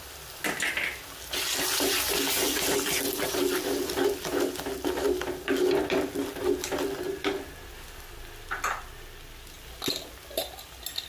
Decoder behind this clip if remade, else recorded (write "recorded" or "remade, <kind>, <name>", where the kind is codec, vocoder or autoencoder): recorded